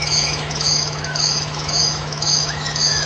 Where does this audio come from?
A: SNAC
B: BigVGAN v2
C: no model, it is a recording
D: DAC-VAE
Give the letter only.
D